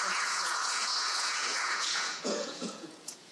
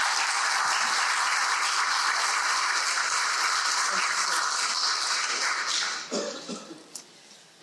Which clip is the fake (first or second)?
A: first